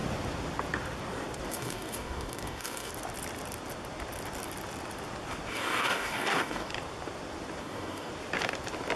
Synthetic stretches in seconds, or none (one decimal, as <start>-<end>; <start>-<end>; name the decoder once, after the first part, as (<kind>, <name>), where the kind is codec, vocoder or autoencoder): 1.5-2.9 (codec, DAC); 5.5-6.7; 7.6-8.1